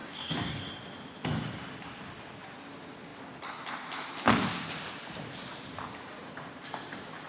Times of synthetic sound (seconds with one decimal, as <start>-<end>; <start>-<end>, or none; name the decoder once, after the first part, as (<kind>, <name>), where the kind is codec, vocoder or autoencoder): 0.0-0.7 (codec, DAC)